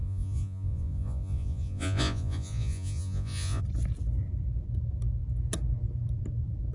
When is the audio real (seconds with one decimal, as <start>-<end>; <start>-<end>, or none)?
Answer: 3.6-6.7